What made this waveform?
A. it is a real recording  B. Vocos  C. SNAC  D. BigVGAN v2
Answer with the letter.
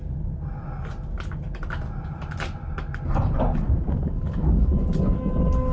A